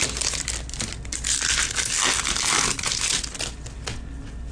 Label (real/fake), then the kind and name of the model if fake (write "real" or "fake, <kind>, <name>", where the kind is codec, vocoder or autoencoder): real